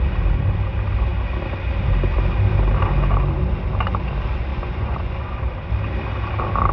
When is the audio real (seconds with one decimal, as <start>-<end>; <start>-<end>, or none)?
0.0-4.5; 5.4-6.7